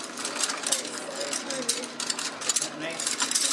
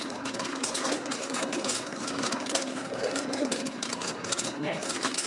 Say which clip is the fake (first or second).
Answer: second